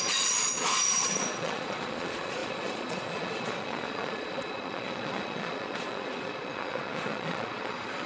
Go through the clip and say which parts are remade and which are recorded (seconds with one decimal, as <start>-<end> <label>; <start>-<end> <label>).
0.0-8.1 remade